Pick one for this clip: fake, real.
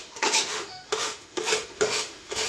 fake